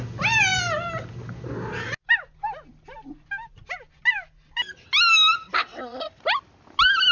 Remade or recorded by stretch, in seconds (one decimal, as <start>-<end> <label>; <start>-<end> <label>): 0.0-5.6 recorded; 5.6-6.2 remade; 6.2-7.1 recorded